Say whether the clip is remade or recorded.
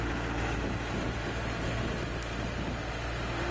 recorded